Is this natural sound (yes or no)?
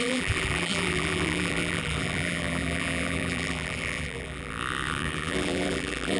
no